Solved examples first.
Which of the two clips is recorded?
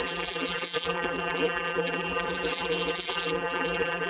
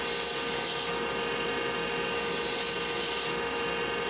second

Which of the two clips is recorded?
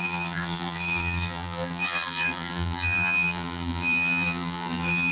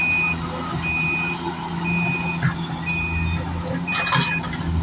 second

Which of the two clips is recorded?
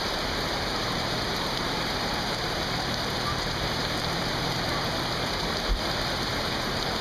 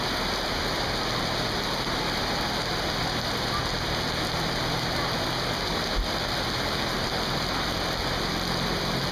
second